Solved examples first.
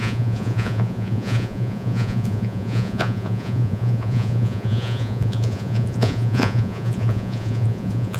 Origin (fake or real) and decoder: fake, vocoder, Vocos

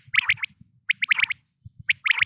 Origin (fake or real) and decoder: real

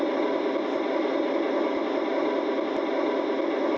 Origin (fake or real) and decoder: real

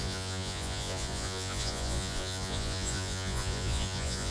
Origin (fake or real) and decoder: fake, vocoder, Vocos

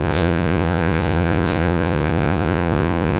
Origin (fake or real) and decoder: fake, vocoder, Vocos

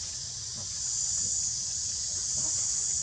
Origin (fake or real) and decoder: fake, vocoder, Vocos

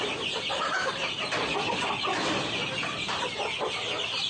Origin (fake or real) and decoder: real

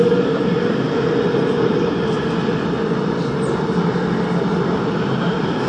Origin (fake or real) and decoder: real